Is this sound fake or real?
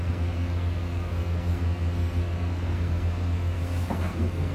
fake